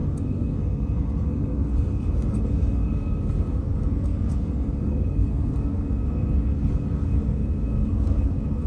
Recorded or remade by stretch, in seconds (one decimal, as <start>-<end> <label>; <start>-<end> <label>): 0.0-8.7 remade